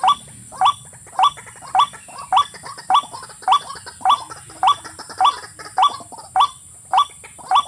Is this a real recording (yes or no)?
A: yes